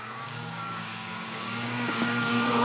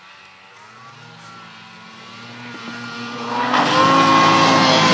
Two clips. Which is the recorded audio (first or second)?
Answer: second